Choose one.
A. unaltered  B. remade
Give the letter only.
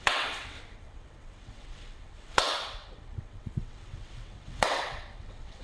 B